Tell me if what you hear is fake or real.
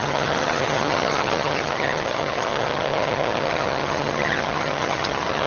fake